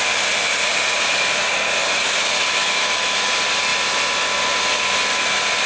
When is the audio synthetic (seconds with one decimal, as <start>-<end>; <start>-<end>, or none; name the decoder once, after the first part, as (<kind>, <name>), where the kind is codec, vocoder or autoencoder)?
2.6-3.3 (autoencoder, DAC-VAE)